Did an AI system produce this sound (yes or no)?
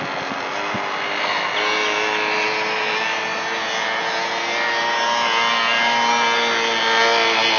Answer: no